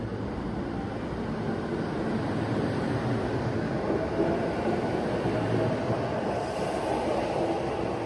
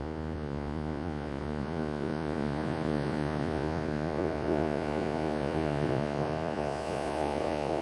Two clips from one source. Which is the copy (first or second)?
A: second